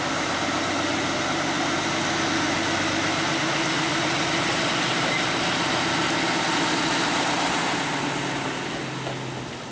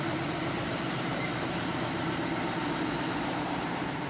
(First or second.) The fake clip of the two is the second